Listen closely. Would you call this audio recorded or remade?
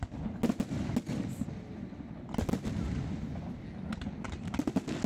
recorded